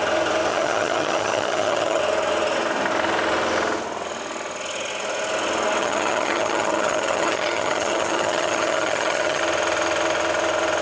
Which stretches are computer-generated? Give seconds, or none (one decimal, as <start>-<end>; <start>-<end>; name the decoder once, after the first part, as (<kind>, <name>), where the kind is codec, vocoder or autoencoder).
0.5-2.0 (vocoder, HiFi-GAN); 5.8-9.4